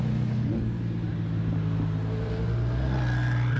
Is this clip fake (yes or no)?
no